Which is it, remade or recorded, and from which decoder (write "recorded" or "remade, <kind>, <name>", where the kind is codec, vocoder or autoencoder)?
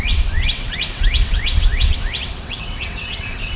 remade, vocoder, WaveNeXt